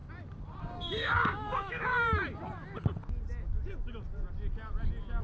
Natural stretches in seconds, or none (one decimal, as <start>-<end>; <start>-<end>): 0.0-0.6; 1.9-5.2